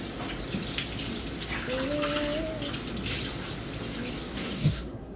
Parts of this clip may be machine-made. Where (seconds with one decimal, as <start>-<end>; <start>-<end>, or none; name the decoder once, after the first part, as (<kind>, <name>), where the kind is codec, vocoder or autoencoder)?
4.3-5.2 (codec, SNAC)